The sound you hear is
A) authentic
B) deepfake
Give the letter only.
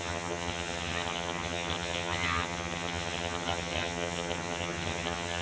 B